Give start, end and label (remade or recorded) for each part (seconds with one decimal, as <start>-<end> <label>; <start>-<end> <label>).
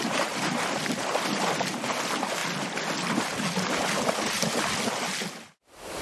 0.0-6.0 recorded